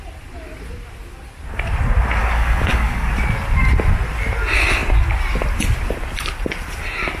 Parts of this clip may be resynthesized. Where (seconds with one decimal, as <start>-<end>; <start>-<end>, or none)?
2.2-3.1